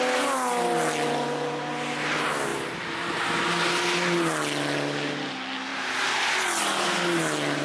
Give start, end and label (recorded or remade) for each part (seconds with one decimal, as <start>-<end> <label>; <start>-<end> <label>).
0.0-5.7 recorded; 5.7-6.6 remade; 6.6-7.6 recorded